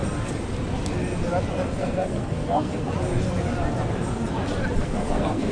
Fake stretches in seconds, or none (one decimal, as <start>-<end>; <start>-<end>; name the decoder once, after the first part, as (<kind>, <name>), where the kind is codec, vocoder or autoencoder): 1.8-2.9 (codec, SNAC); 4.8-5.5